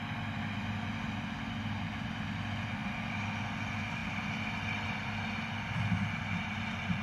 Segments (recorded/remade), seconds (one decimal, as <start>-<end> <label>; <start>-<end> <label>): 0.0-7.0 recorded